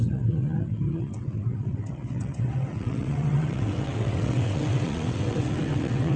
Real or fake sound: fake